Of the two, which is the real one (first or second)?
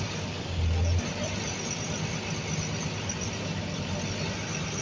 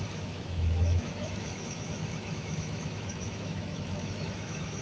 first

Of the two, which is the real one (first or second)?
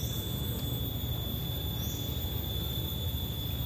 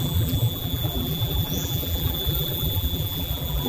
first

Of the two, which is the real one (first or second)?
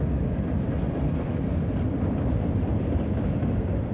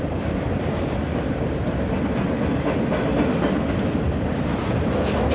second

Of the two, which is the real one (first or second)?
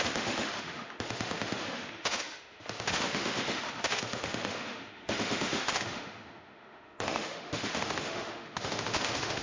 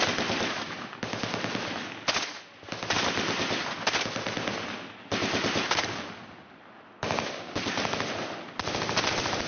second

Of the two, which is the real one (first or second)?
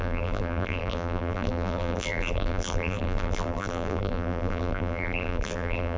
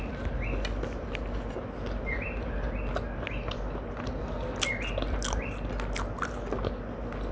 second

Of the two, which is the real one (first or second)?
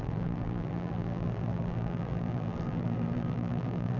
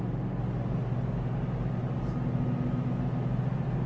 second